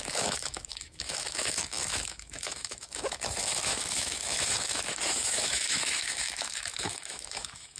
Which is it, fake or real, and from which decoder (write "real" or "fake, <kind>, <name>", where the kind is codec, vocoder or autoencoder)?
fake, autoencoder, DAC-VAE